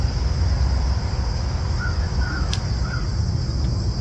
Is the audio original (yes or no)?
yes